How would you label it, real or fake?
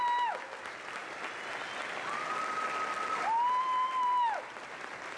real